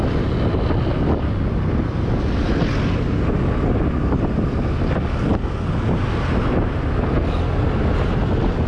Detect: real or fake real